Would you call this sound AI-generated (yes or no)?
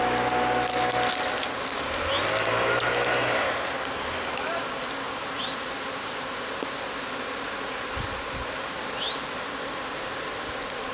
no